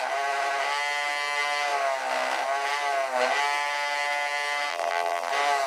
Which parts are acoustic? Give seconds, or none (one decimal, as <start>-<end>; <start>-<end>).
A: 0.0-4.7; 5.3-5.7